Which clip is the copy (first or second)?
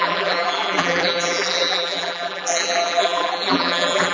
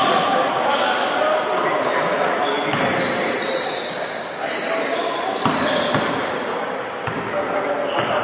first